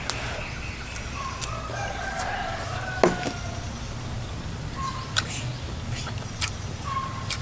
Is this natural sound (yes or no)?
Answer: yes